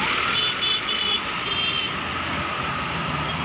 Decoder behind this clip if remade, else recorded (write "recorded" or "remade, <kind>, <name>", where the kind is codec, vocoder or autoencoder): recorded